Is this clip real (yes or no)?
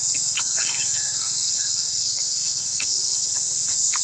no